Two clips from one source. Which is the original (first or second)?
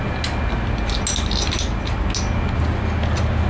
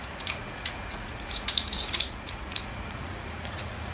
first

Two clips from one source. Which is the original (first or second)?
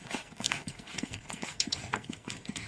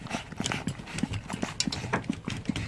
second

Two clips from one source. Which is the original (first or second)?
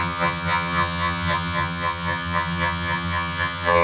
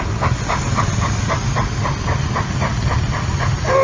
second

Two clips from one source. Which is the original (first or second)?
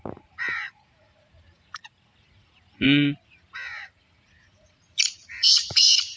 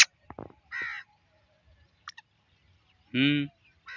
second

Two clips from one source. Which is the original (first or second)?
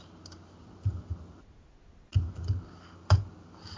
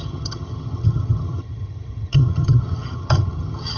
first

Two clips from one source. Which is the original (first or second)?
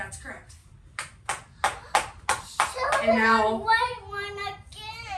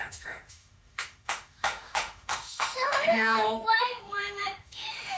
first